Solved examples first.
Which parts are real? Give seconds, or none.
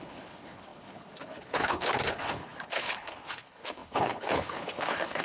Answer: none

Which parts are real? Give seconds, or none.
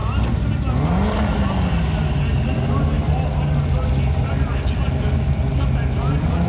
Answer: 0.0-6.5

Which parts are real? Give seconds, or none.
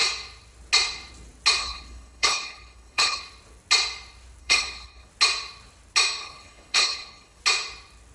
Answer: 0.0-1.6; 3.2-4.4; 5.1-6.2; 7.4-8.1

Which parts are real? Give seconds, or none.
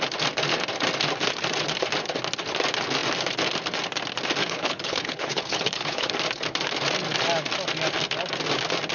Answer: 0.0-4.4; 6.1-8.9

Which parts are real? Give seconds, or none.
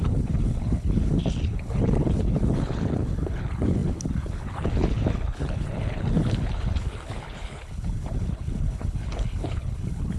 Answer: none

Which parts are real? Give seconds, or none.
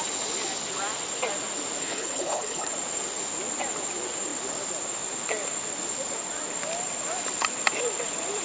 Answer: 0.0-1.8; 2.7-8.4